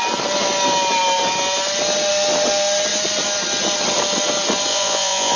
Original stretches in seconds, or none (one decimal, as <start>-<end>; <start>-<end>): 0.0-4.7